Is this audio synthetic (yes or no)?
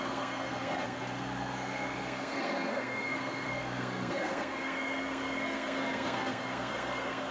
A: yes